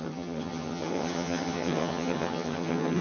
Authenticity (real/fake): fake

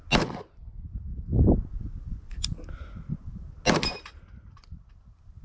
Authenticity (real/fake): real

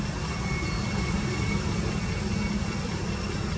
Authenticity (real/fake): real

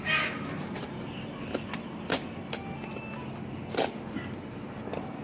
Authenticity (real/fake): real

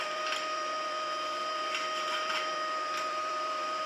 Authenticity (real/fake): fake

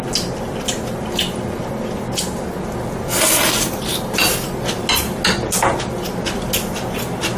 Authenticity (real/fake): real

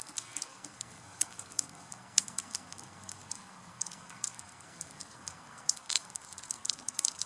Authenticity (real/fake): fake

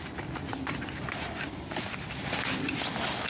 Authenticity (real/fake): real